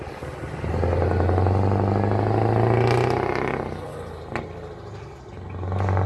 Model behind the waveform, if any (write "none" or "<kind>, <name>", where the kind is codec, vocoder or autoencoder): none